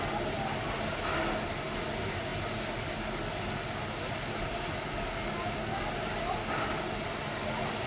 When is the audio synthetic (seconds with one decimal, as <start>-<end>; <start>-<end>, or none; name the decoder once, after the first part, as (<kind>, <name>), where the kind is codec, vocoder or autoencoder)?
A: none